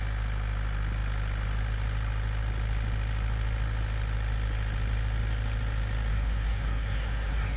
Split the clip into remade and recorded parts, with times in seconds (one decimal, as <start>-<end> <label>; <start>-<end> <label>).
0.0-6.1 recorded; 6.1-7.6 remade